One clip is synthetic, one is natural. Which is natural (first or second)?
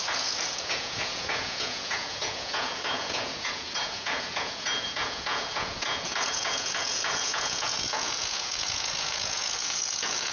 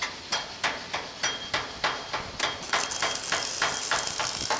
second